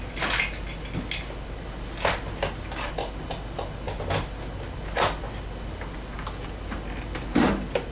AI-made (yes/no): no